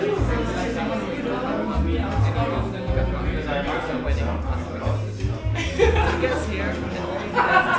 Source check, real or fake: real